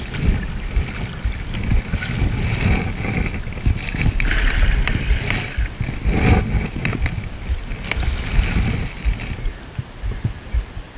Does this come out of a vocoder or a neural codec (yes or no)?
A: no